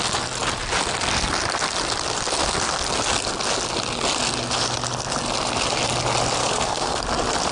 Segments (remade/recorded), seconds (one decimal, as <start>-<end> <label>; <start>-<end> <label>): 0.0-6.4 recorded; 6.4-7.0 remade; 7.0-7.5 recorded

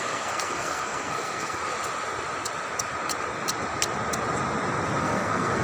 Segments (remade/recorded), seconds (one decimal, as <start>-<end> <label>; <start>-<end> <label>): 0.0-1.6 remade; 1.6-5.0 recorded; 5.0-5.6 remade

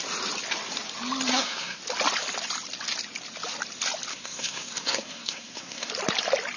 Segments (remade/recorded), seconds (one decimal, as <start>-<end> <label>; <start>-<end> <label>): 0.0-1.3 recorded; 1.3-1.8 remade; 1.8-4.1 recorded; 4.1-5.9 remade; 5.9-6.6 recorded

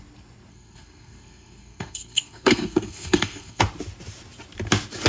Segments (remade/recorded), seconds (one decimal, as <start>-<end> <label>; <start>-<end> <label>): 0.0-0.5 recorded; 0.5-3.6 remade; 3.6-5.1 recorded